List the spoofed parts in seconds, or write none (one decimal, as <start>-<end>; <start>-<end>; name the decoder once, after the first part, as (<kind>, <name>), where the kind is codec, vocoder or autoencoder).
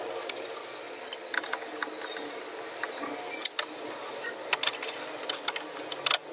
none